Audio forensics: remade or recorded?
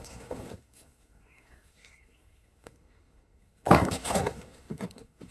remade